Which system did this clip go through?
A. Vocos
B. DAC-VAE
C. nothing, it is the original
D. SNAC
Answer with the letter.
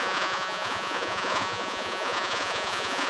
A